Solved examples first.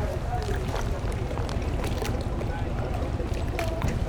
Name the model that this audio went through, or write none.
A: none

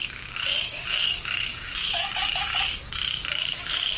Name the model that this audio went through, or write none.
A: codec, DAC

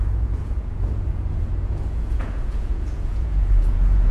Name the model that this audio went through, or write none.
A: vocoder, Vocos